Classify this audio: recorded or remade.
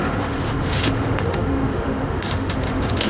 remade